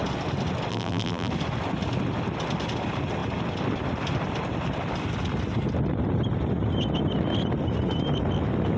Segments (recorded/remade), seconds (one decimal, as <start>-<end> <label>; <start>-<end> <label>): 0.0-0.7 recorded; 0.7-1.3 remade; 1.3-8.8 recorded